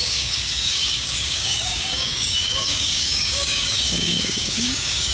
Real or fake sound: fake